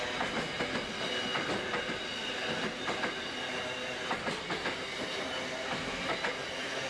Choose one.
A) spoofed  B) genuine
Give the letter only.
B